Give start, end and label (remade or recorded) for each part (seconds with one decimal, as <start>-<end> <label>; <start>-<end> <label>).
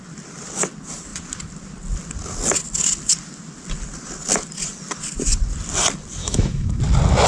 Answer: 0.0-6.2 recorded; 6.2-6.8 remade; 6.8-7.3 recorded